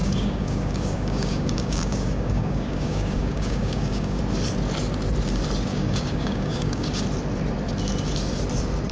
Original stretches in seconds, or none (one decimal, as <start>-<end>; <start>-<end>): 4.2-5.7; 7.0-8.9